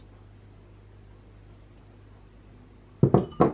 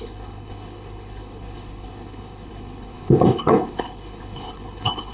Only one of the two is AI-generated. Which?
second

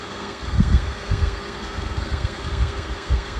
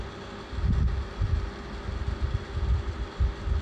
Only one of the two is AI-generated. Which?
first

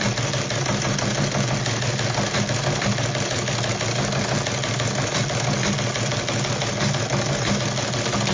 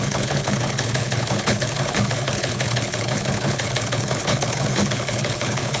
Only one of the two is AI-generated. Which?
second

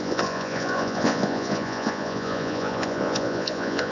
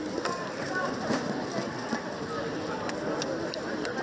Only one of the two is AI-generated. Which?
first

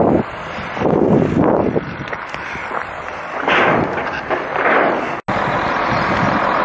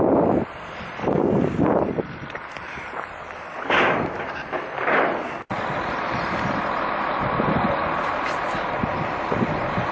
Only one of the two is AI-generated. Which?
second